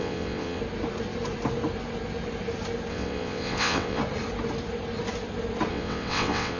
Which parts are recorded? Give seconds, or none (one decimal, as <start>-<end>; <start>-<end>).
0.6-2.9; 4.0-5.7